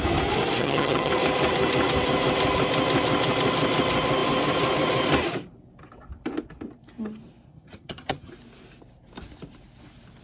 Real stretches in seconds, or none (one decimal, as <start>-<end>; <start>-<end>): 0.0-0.6; 1.1-7.5; 8.3-10.2